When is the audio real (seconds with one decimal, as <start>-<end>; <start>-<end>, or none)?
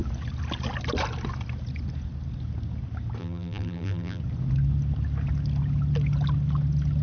0.0-3.2; 4.2-7.0